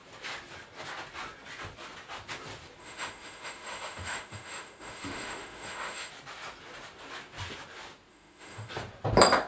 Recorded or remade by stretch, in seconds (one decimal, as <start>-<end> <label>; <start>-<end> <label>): 0.0-2.8 recorded; 2.8-6.1 remade; 6.1-8.1 recorded; 8.1-8.7 remade; 8.7-9.5 recorded